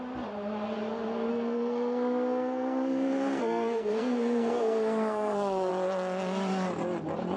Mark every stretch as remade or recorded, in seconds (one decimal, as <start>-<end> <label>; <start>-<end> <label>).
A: 0.0-1.3 recorded; 1.3-5.7 remade; 5.7-7.4 recorded